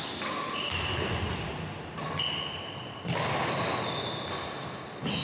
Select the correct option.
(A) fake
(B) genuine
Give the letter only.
B